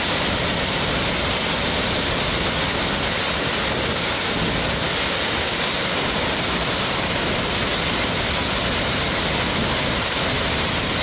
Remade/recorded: recorded